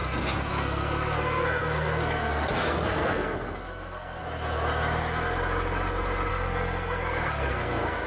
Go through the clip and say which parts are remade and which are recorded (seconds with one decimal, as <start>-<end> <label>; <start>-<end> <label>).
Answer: 0.0-0.5 recorded; 0.5-4.2 remade; 4.2-6.3 recorded; 6.3-8.1 remade